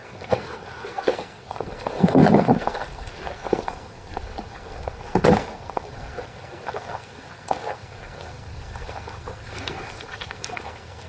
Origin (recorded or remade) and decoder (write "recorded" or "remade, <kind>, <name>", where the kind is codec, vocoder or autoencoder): remade, codec, SNAC